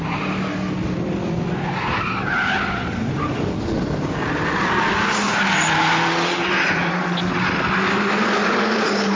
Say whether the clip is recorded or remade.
recorded